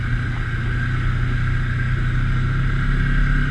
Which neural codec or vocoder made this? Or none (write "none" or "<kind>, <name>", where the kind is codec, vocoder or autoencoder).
none